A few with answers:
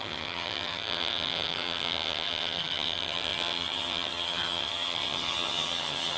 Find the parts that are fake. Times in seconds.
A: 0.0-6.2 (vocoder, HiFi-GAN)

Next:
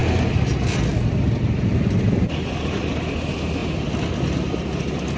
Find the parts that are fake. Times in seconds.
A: none

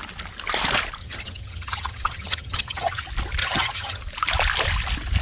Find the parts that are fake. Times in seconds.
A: 1.0-3.0 (vocoder, HiFi-GAN); 3.4-4.0

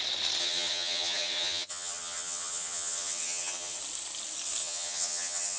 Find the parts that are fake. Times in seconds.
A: 0.4-3.8 (vocoder, HiFi-GAN); 4.6-5.6

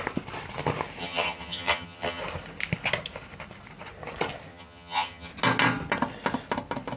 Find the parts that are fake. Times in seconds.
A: 1.0-2.2 (vocoder, HiFi-GAN); 4.5-5.3

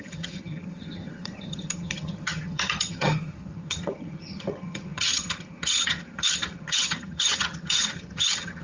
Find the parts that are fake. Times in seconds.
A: 0.0-8.6 (vocoder, HiFi-GAN)

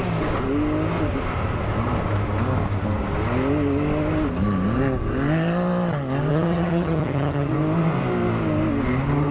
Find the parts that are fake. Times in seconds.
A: 6.3-7.5 (vocoder, HiFi-GAN)